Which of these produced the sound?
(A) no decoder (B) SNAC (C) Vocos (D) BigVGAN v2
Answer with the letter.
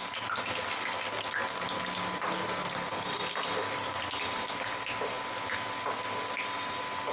A